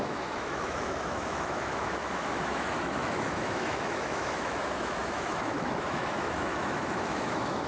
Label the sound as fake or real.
fake